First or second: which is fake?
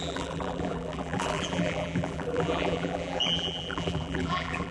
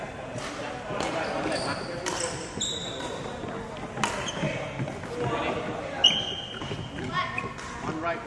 first